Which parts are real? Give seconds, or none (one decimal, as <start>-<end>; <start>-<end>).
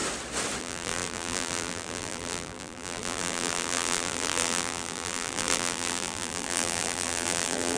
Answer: 0.0-0.6